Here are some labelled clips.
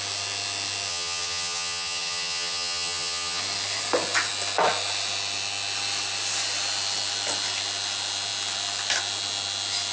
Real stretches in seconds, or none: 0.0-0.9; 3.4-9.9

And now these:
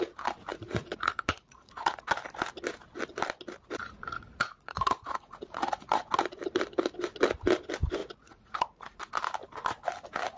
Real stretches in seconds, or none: 0.0-0.5; 2.1-3.8; 6.1-8.0; 9.1-10.4

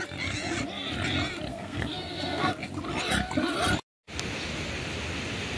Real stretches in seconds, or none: 0.0-1.5; 2.5-5.6

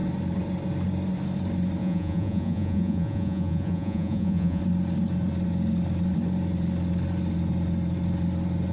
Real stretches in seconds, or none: 0.0-1.8; 4.6-8.7

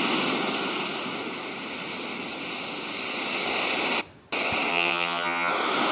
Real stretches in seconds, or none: 0.0-4.7; 5.5-5.9

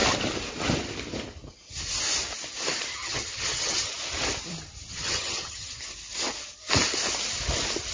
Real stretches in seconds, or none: 0.0-2.9; 3.9-4.9; 5.8-7.9